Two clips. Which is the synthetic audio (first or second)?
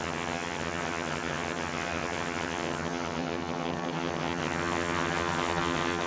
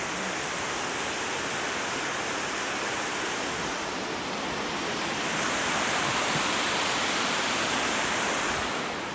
first